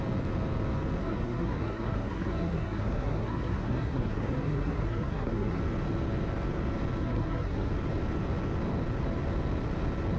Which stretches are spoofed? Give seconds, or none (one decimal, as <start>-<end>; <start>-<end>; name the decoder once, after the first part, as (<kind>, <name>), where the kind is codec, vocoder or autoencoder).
1.0-5.6 (codec, SNAC); 7.0-7.7